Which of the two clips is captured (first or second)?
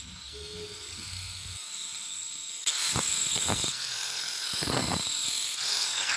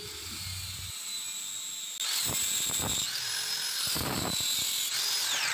second